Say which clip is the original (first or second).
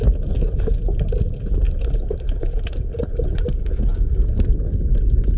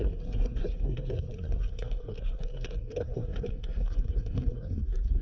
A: first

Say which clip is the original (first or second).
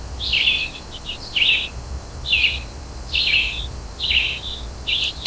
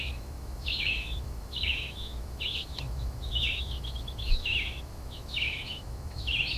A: first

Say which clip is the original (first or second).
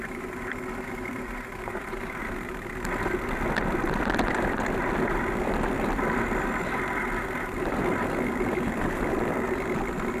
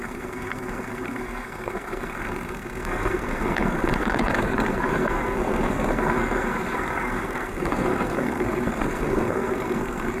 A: first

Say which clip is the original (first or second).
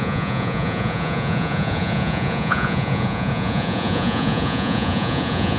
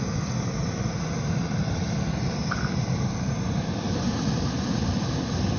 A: second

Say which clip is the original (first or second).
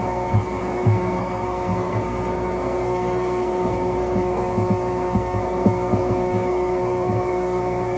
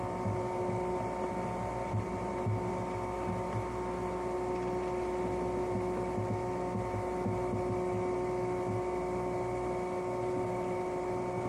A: second